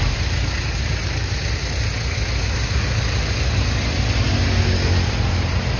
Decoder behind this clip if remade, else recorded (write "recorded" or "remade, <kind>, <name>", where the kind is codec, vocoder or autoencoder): recorded